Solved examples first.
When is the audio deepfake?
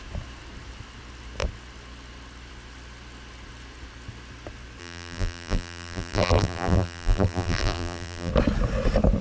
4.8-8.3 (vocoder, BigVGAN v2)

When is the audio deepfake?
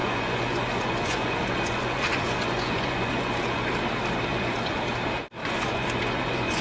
0.0-3.7 (vocoder, Vocos); 4.3-4.8; 5.4-6.6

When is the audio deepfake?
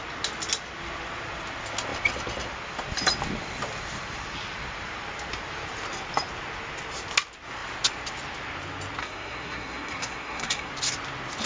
9.0-10.7 (codec, SNAC)